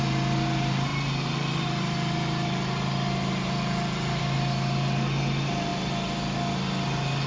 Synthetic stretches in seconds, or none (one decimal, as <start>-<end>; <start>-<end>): none